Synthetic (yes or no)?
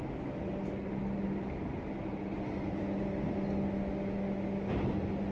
no